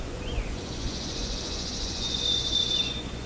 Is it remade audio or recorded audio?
remade